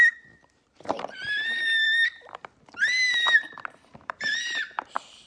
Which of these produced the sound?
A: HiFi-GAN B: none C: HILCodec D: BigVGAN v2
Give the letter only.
D